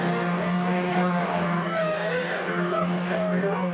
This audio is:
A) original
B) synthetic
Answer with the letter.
B